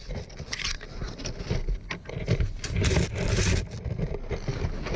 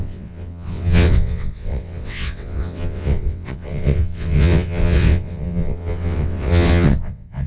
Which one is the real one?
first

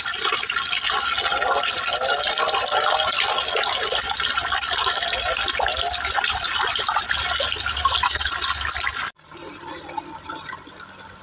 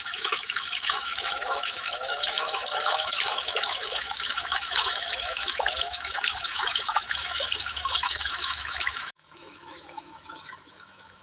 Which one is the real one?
first